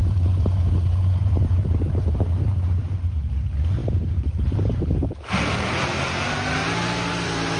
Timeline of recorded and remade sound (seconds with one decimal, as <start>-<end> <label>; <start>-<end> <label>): 0.0-3.3 remade; 3.3-3.8 recorded; 3.8-5.1 remade; 5.1-7.6 recorded